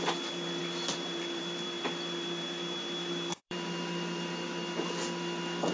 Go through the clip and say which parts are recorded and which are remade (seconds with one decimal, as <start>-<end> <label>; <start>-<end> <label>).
0.0-5.7 remade

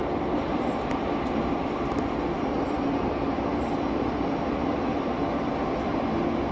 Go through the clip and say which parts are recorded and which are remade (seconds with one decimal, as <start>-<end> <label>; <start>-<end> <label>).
0.0-6.5 recorded